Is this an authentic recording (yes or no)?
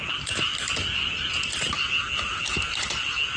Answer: yes